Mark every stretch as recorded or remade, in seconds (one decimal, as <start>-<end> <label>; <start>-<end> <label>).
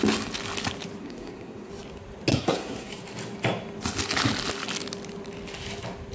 0.0-1.0 recorded; 1.0-1.7 remade; 1.7-2.3 recorded; 2.3-2.9 remade; 2.9-6.1 recorded